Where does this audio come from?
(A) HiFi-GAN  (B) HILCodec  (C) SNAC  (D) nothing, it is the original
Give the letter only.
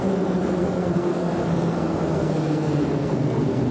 C